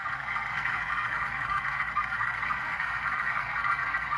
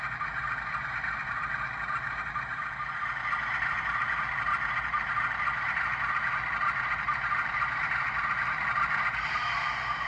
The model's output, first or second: first